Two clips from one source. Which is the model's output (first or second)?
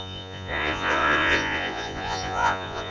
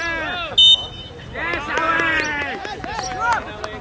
first